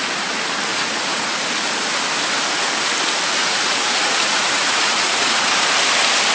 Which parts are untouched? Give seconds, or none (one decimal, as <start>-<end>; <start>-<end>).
0.0-0.7; 1.4-3.4; 5.5-6.3

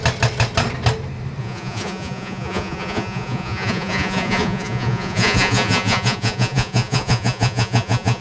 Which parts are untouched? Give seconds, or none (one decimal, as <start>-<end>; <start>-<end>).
0.0-1.4

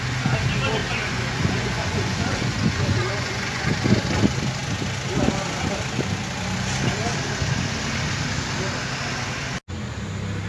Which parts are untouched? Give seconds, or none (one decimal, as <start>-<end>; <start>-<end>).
0.0-0.8; 3.7-10.5

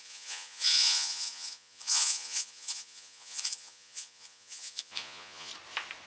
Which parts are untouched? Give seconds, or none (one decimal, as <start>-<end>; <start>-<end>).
5.5-6.1

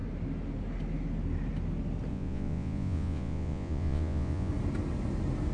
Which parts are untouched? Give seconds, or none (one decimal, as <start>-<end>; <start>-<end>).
0.0-2.1; 4.5-5.5

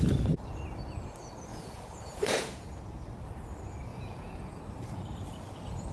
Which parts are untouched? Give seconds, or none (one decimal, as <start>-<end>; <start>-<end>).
0.0-1.5; 2.8-3.9; 4.6-5.9